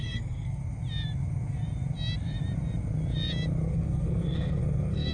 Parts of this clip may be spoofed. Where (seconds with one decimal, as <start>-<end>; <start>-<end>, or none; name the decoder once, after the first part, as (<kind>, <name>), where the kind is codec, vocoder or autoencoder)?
0.0-0.6 (codec, SNAC); 3.7-5.1